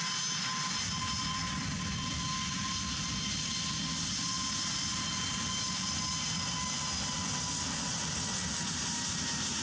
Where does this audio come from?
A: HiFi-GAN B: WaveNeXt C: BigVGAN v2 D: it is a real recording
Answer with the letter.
C